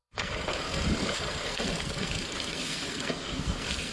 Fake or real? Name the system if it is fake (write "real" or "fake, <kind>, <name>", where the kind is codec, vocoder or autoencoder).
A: fake, codec, SNAC